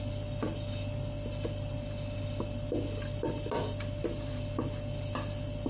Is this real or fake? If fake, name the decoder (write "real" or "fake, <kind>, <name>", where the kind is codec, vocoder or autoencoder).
real